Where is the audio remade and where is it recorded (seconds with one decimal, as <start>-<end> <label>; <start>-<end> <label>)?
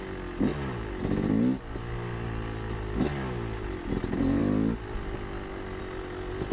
0.0-6.5 recorded